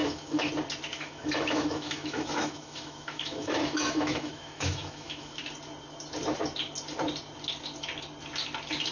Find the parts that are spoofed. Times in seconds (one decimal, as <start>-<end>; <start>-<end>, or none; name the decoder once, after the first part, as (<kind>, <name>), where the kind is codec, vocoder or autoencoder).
0.0-0.5 (autoencoder, DAC-VAE); 0.9-5.4